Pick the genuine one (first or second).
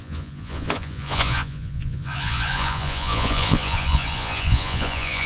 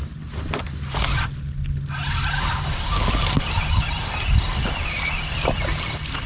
second